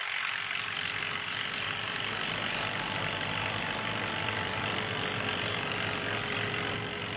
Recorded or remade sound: recorded